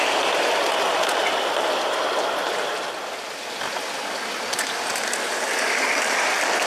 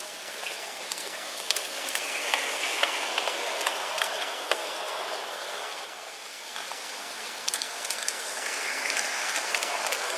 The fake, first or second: second